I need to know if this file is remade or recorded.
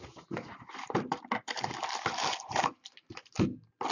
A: recorded